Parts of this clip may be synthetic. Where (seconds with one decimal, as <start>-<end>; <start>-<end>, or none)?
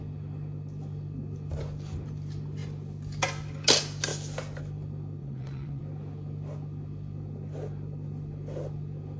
5.2-5.8